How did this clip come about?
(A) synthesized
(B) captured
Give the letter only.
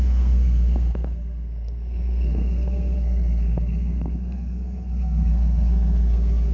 A